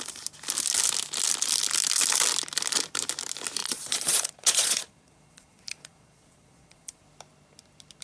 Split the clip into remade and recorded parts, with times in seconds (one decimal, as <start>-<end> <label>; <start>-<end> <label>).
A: 0.0-3.6 recorded; 3.6-7.0 remade; 7.0-8.0 recorded